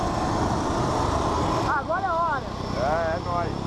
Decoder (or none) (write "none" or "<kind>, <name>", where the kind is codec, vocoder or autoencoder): none